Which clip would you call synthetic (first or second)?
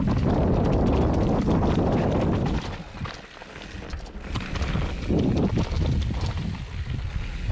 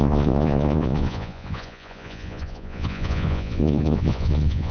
second